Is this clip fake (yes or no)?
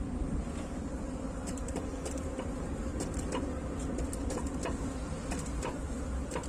yes